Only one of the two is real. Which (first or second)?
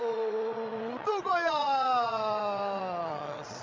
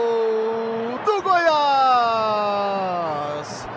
second